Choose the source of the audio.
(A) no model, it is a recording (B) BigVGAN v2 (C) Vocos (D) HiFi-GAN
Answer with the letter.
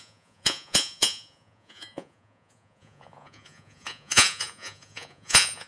C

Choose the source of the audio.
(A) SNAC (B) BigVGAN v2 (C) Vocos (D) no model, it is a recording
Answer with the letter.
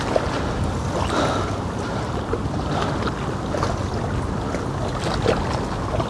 D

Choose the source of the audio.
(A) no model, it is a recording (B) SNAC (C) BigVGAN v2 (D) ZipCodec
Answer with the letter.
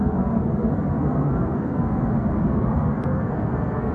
B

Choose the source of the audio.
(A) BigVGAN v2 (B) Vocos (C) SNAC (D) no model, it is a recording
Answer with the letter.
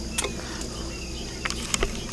D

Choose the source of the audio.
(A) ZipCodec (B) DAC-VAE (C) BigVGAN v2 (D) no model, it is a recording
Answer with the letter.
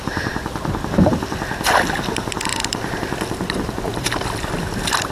C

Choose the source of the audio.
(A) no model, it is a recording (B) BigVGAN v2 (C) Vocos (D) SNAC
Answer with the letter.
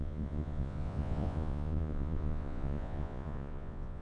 C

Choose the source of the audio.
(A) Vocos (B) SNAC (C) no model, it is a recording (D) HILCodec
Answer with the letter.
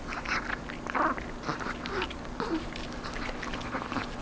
C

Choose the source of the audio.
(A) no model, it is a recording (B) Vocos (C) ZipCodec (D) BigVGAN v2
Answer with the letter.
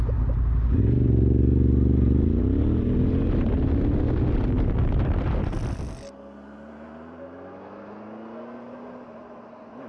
A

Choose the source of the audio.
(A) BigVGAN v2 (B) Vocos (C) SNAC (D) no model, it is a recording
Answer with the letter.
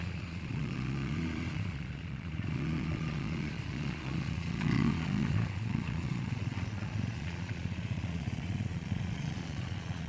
B